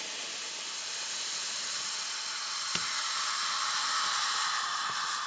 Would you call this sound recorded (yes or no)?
yes